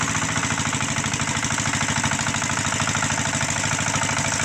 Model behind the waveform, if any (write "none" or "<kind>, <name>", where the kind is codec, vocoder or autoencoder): none